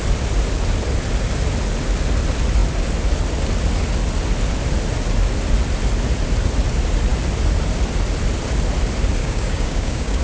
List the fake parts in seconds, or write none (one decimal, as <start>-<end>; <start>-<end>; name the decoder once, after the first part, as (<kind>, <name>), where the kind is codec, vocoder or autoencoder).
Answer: 9.2-10.2 (codec, DAC)